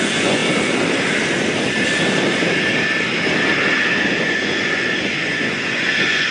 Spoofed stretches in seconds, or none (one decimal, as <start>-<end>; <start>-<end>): 0.0-0.4; 4.2-6.3